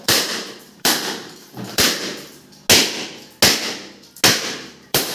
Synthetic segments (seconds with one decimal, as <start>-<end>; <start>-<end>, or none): 0.0-2.3; 4.3-5.1